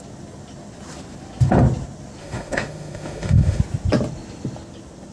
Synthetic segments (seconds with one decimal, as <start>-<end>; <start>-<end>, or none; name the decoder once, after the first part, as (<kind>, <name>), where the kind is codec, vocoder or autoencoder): 2.2-3.6 (autoencoder, DAC-VAE)